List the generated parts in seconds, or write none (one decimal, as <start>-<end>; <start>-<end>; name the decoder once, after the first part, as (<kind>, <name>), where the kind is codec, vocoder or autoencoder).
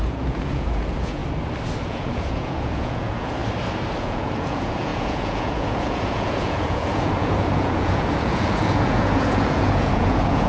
0.0-1.2 (vocoder, Vocos); 1.8-3.4; 4.0-10.5